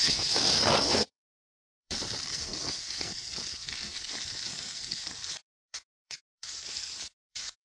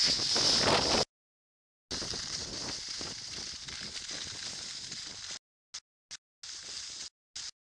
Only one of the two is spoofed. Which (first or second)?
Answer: first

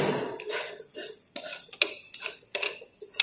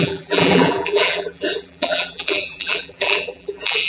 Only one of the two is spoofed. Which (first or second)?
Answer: second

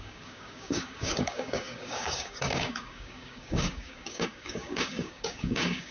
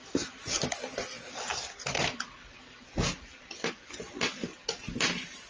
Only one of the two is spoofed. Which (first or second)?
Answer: first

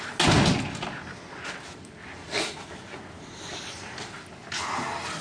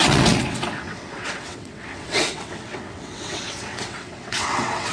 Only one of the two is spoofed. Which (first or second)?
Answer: second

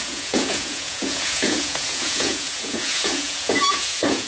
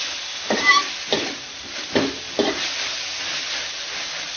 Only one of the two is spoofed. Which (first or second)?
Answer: first